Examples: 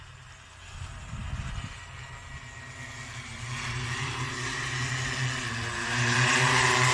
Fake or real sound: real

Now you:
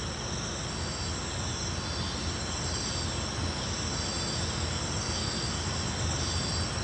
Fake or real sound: real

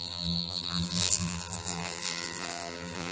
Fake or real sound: fake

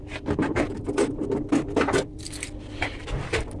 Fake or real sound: fake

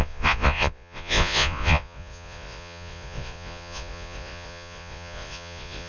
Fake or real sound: fake